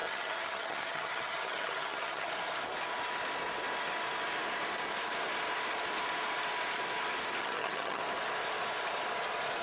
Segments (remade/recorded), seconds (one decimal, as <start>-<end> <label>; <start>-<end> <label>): 0.0-2.3 remade; 2.3-7.4 recorded; 7.4-8.0 remade; 8.0-9.6 recorded